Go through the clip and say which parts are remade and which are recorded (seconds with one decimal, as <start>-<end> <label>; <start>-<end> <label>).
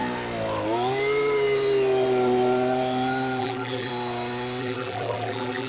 0.0-3.4 recorded; 3.4-3.9 remade; 3.9-4.6 recorded; 4.6-5.7 remade